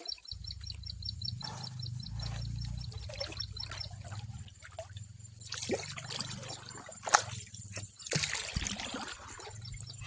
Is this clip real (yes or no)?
yes